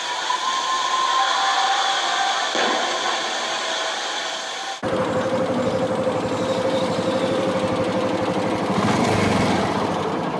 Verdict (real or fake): real